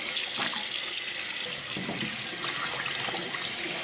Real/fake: real